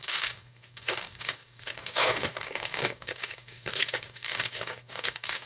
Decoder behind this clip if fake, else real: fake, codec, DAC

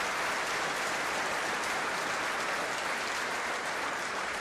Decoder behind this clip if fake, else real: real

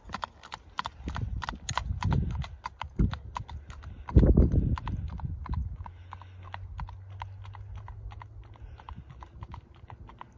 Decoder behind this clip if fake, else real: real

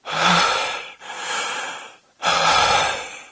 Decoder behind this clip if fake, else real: real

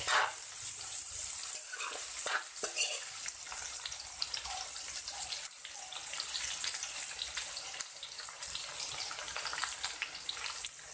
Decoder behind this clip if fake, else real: fake, vocoder, BigVGAN v2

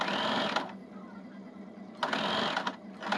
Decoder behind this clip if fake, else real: real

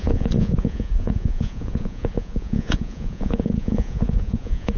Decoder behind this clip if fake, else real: fake, vocoder, Vocos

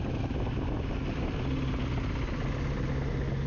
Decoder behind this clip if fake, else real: real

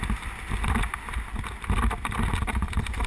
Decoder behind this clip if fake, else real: real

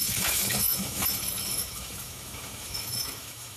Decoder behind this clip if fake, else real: fake, autoencoder, DAC-VAE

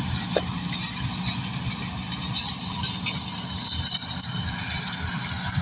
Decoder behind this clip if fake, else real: real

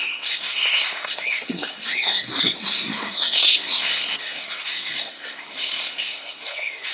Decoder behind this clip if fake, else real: fake, codec, SNAC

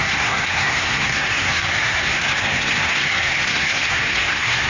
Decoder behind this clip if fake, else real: fake, codec, SNAC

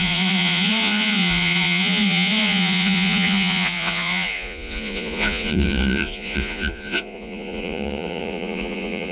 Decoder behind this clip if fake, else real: fake, vocoder, Vocos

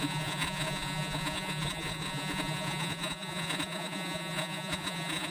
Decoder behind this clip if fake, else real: fake, vocoder, Vocos